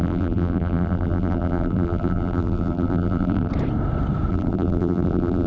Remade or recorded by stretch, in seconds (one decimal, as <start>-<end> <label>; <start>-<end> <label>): 0.0-3.5 remade; 3.5-4.3 recorded; 4.3-5.5 remade